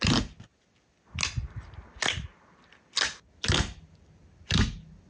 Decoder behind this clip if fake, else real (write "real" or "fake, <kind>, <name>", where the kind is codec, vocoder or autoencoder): real